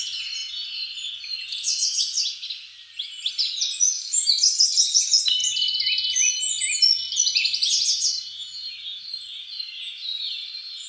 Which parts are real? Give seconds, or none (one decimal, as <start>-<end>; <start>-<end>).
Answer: 0.0-10.9